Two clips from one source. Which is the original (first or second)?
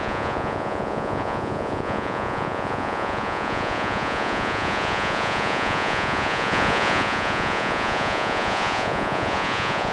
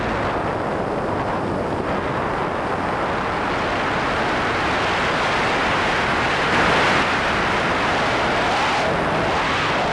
second